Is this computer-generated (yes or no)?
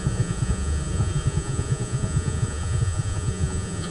yes